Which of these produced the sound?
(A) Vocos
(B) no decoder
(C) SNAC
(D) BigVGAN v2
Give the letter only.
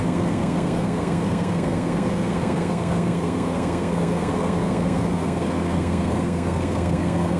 C